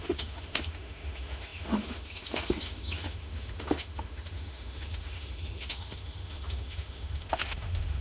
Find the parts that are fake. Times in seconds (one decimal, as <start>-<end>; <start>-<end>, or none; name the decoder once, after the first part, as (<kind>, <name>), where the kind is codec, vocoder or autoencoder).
0.0-8.0 (autoencoder, DAC-VAE)